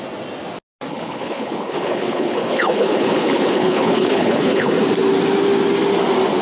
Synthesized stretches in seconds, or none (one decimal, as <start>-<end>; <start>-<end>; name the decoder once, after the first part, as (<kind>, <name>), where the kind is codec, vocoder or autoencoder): 0.9-4.7 (codec, HILCodec)